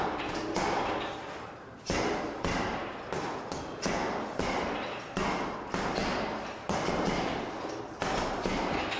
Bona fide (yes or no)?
yes